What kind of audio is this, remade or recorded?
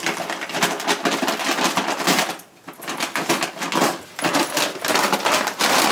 recorded